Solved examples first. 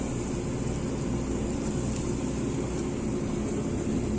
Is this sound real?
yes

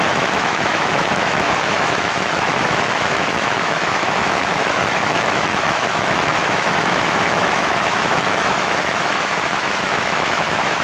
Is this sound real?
no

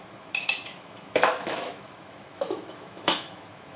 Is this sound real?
no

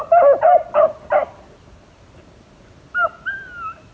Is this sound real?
yes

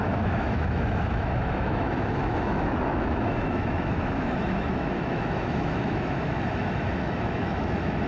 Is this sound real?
no